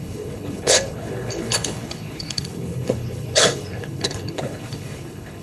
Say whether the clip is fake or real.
fake